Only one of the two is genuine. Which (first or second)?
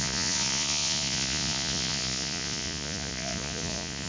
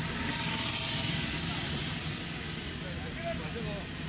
second